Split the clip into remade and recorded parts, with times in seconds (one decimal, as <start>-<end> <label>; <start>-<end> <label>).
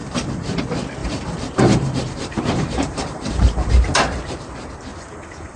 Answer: 0.0-0.6 remade; 0.6-1.0 recorded; 1.0-3.7 remade; 3.7-4.9 recorded; 4.9-5.6 remade